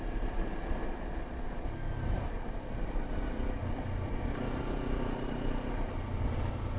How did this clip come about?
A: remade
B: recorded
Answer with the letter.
B